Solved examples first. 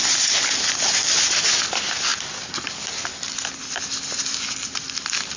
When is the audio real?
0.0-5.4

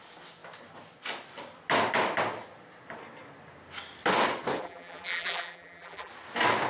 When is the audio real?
0.0-4.6; 6.1-6.7

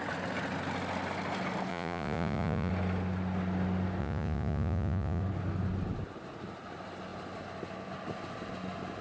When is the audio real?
0.0-1.7; 2.7-4.0; 5.2-9.0

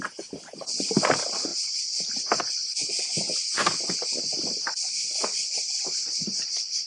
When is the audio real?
0.0-6.9

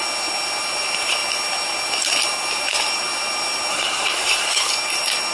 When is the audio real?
0.0-3.7; 4.7-5.3